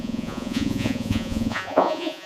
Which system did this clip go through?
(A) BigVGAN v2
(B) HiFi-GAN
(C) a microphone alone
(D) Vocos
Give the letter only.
D